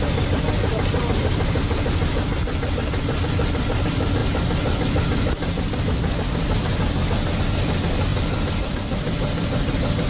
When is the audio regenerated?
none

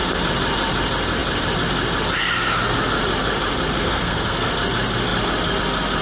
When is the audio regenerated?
3.8-4.5 (codec, SNAC)

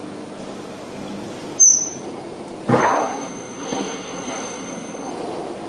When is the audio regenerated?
2.8-5.1 (codec, SNAC)

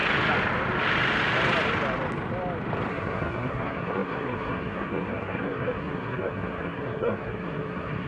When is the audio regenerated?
2.9-8.1 (codec, SNAC)

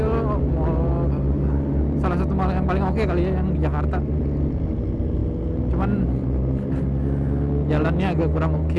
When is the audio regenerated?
none